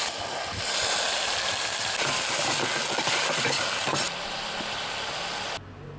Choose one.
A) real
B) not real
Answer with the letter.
A